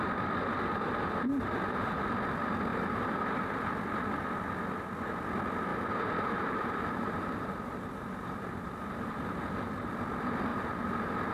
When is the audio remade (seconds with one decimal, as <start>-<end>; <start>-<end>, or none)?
0.7-2.0; 2.7-3.7; 5.7-9.9; 10.5-11.3

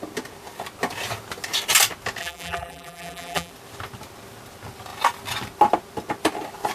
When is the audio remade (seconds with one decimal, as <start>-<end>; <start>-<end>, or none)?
2.2-3.5

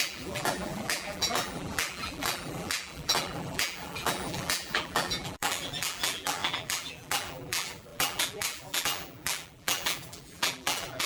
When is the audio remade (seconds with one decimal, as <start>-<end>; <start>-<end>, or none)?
0.0-11.1

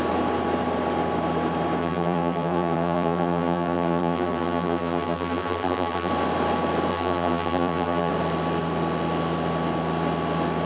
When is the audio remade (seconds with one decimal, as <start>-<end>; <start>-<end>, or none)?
1.8-6.1; 6.9-8.1

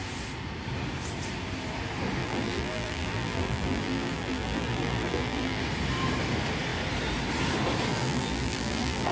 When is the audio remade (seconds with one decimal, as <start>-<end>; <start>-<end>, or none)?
2.2-5.6; 7.9-9.1

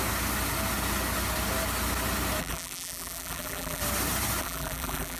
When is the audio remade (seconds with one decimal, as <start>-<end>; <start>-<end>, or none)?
2.4-3.8; 4.4-5.2